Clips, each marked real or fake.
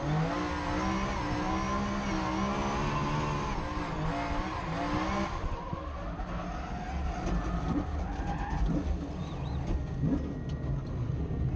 real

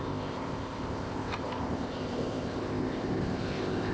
fake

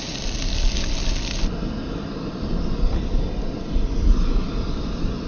real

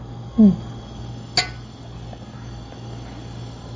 real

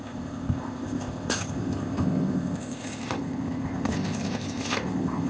fake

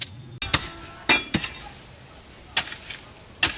real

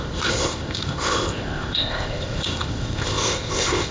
fake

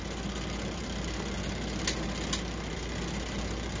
real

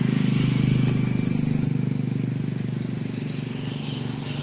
real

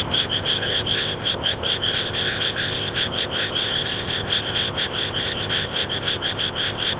fake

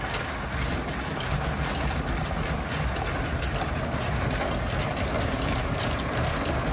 real